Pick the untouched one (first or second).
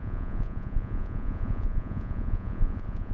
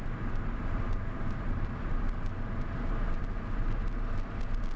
second